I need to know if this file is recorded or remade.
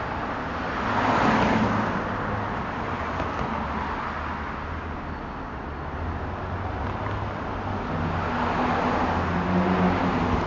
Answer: recorded